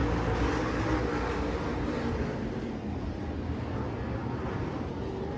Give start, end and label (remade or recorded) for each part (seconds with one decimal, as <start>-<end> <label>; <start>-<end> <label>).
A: 0.0-5.4 recorded

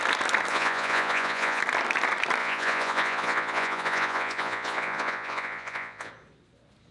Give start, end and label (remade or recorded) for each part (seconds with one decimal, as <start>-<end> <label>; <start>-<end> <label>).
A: 0.0-0.5 recorded; 0.5-1.6 remade; 1.6-2.4 recorded; 2.4-6.1 remade; 6.1-6.9 recorded